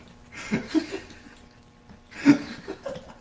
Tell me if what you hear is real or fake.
real